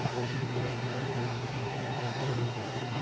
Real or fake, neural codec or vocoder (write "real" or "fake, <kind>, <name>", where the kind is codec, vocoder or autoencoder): fake, codec, SNAC